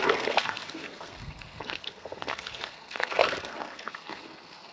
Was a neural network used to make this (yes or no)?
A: yes